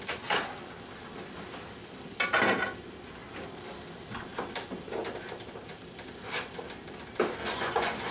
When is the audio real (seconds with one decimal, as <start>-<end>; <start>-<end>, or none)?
0.0-7.4